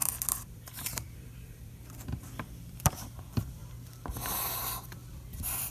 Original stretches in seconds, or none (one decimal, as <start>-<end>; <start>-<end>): 3.6-5.1